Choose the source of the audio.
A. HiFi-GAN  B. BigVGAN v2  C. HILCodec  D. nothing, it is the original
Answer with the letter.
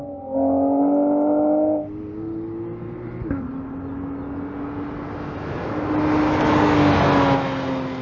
D